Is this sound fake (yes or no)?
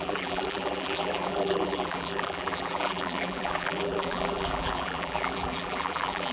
yes